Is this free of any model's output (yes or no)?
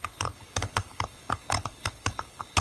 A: no